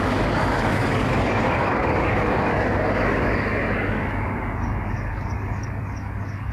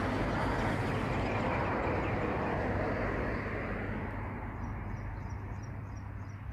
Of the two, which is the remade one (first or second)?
first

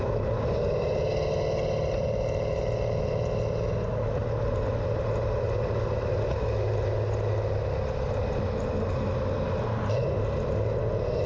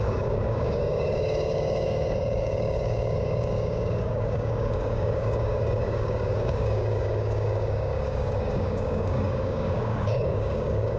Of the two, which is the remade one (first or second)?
second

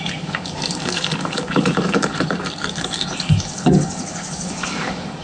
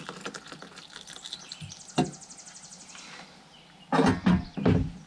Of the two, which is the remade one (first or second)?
first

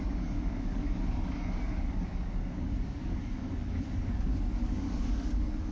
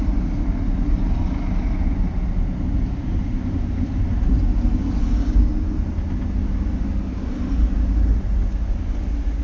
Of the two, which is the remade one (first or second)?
first